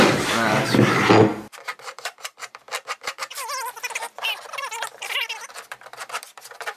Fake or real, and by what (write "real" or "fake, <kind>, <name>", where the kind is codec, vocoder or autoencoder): fake, vocoder, BigVGAN v2